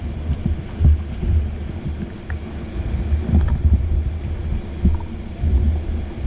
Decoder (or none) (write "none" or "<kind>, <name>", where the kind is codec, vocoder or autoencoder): none